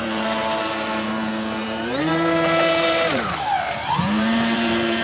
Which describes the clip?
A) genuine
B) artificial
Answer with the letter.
B